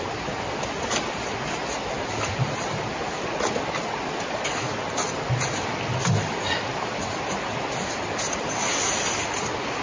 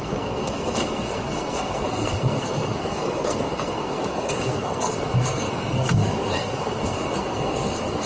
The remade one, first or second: second